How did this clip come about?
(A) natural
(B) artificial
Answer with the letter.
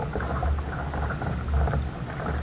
A